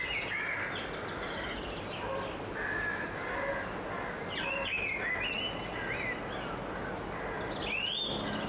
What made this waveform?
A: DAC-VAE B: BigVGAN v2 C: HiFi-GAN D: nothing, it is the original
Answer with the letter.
D